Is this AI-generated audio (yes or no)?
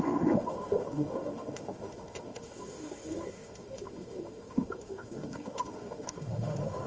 yes